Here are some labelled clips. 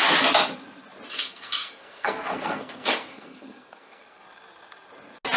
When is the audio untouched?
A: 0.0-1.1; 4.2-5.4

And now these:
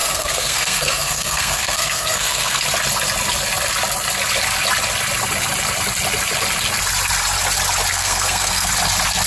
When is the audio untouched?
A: 2.6-7.9; 8.7-9.3

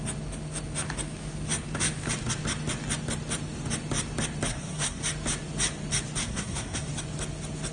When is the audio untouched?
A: 0.0-4.5; 5.0-6.2; 6.9-7.7

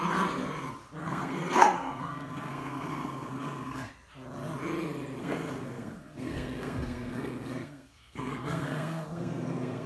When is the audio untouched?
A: 0.0-1.0; 3.9-5.2

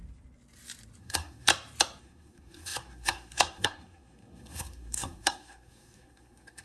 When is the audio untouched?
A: 0.0-1.0; 1.5-2.0

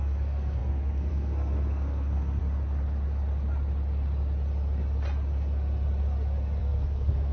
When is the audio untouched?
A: 2.4-6.6